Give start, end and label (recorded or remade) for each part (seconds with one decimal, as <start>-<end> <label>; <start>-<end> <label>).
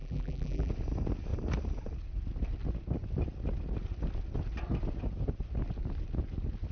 0.0-0.7 remade; 0.7-6.7 recorded